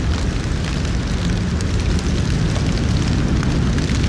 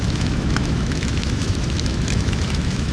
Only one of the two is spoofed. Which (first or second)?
second